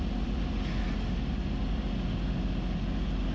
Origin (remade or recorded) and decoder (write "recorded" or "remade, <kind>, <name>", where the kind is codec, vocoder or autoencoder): recorded